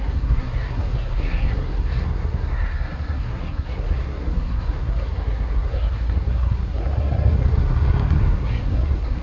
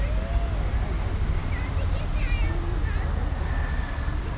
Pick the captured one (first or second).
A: second